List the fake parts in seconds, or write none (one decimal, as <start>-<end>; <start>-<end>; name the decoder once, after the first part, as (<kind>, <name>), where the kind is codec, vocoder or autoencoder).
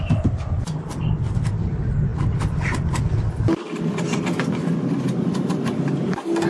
none